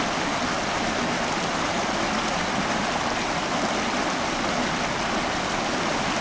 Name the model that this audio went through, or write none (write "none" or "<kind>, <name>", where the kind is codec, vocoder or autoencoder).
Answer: none